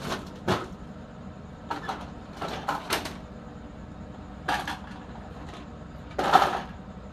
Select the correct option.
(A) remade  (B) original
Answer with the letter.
A